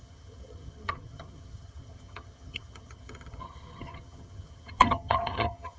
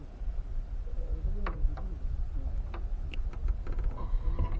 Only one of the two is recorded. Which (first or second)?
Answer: second